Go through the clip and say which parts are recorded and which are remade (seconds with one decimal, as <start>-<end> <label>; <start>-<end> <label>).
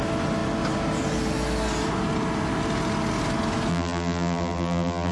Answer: 0.0-3.7 recorded; 3.7-5.1 remade